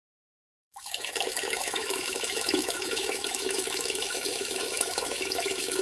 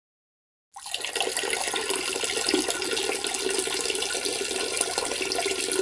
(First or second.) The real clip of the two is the second